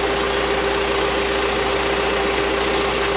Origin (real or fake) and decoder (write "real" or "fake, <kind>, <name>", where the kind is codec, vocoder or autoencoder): real